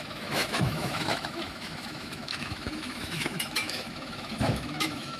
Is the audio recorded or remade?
remade